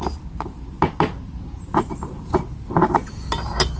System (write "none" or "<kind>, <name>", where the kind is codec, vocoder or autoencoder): none